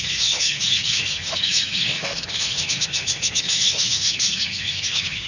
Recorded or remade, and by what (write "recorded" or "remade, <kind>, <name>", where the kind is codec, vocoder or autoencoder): remade, autoencoder, DAC-VAE